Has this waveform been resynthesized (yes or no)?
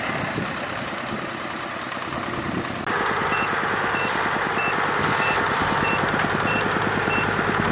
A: no